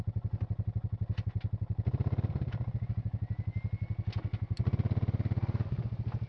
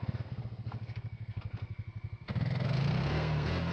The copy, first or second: second